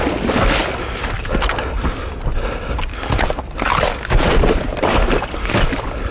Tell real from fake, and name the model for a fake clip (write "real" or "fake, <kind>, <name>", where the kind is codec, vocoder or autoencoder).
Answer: real